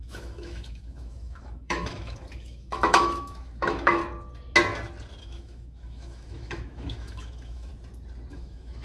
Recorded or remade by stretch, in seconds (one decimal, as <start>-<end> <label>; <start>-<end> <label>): 0.0-4.0 remade; 4.0-5.2 recorded; 5.2-7.7 remade; 7.7-8.3 recorded; 8.3-8.8 remade

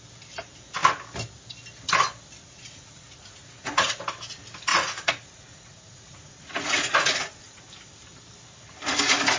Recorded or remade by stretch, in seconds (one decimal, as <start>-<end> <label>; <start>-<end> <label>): 0.0-2.4 recorded; 2.4-4.0 remade; 4.0-4.7 recorded; 4.7-7.6 remade; 7.6-9.4 recorded

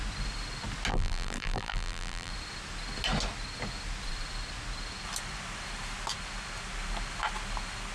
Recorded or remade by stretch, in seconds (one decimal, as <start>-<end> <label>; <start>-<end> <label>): 0.0-0.9 recorded; 0.9-2.3 remade; 2.3-7.9 recorded

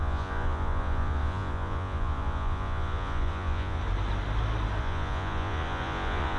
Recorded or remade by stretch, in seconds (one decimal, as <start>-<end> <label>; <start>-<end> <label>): 0.0-3.8 remade; 3.8-4.8 recorded; 4.8-6.4 remade

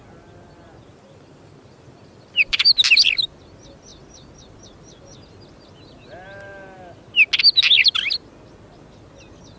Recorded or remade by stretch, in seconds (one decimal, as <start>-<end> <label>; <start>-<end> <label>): 0.0-0.9 recorded; 0.9-2.6 remade; 2.6-9.6 recorded

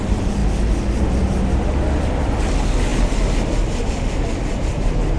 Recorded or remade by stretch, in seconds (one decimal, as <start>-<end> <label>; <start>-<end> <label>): 0.0-5.2 recorded

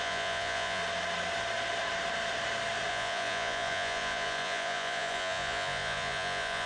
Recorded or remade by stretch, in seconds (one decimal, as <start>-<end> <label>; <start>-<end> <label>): 0.0-0.8 remade; 0.8-2.9 recorded; 2.9-6.7 remade

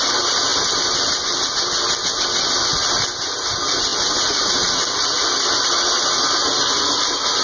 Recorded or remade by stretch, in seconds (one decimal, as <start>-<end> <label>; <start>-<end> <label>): 0.0-7.4 recorded